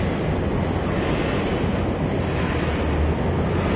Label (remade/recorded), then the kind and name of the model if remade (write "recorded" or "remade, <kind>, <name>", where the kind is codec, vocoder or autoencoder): recorded